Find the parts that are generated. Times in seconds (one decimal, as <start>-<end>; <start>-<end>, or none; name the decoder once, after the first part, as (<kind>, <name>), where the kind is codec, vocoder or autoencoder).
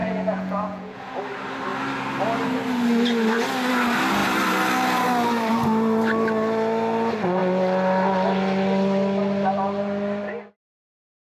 0.0-1.2 (vocoder, Vocos)